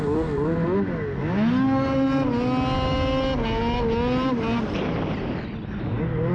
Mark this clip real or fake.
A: real